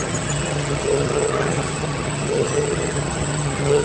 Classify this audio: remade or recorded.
remade